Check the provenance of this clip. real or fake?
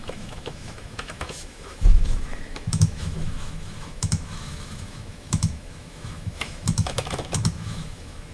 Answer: fake